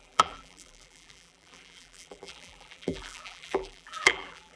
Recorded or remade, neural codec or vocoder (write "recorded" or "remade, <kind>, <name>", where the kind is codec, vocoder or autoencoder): remade, vocoder, BigVGAN v2